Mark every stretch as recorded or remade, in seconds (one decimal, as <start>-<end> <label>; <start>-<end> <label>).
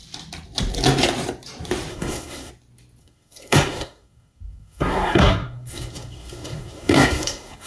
0.0-1.9 recorded; 1.9-2.5 remade; 2.5-3.0 recorded; 3.0-7.7 remade